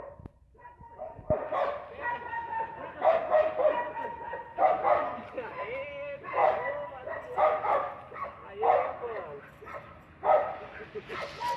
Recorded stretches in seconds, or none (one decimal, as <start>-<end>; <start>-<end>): 0.0-11.6